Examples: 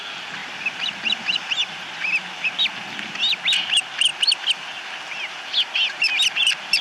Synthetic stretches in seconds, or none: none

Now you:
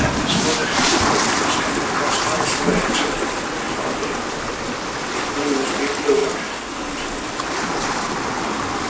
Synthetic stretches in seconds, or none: none

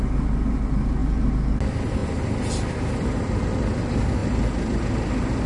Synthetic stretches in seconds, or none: none

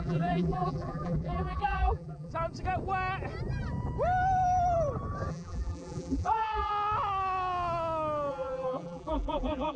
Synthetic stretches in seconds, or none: 0.0-2.3 (vocoder, BigVGAN v2); 5.3-6.7; 8.3-9.8